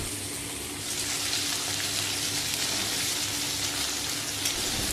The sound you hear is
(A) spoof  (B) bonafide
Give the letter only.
B